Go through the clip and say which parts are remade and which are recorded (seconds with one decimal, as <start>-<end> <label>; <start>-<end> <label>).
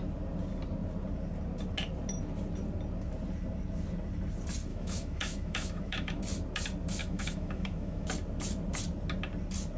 0.0-4.7 recorded; 4.7-6.2 remade; 6.2-7.0 recorded; 7.0-8.1 remade; 8.1-9.8 recorded